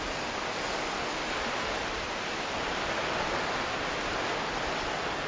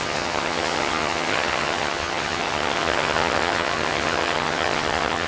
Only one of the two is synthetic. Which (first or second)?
second